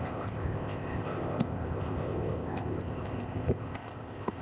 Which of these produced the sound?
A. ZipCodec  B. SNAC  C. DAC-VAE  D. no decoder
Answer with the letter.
A